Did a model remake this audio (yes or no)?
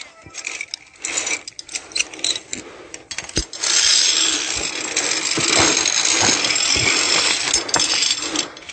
no